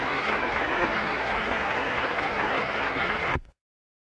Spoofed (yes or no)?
yes